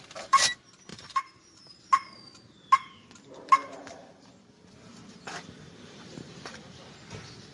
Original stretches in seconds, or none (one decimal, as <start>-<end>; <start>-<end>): 0.0-0.9; 1.7-3.6; 6.8-7.5